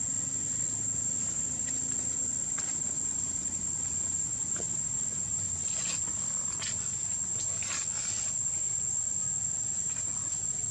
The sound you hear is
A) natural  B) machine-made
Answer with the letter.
A